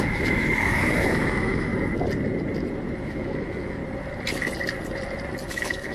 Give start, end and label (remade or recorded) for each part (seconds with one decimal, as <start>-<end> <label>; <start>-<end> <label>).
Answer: 0.0-1.7 remade; 1.7-3.0 recorded; 3.0-3.8 remade; 3.8-5.5 recorded; 5.5-5.9 remade